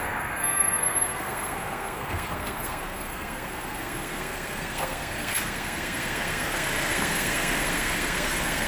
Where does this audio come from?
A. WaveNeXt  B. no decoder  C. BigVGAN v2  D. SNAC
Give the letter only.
D